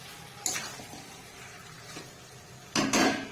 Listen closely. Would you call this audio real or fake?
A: real